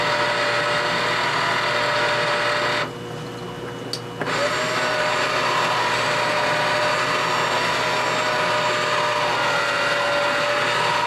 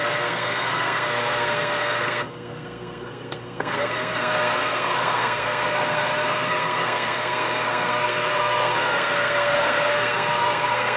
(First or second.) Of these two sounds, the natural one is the first